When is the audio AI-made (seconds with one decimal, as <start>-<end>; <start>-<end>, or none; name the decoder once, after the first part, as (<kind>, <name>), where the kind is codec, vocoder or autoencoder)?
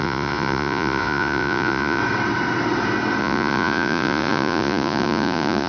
0.0-2.0 (vocoder, Vocos); 3.2-5.7